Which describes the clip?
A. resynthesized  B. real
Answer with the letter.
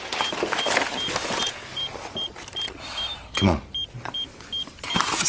B